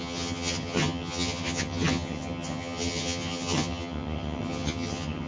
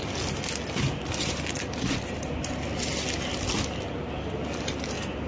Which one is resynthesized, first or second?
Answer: first